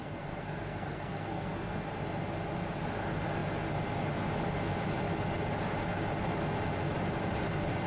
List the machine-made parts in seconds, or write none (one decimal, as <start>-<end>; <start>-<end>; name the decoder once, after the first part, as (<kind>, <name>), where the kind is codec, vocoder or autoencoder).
0.0-1.9 (codec, SNAC)